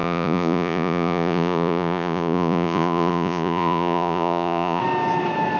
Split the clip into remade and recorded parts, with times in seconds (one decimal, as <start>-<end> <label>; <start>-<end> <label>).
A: 0.0-4.8 remade; 4.8-5.6 recorded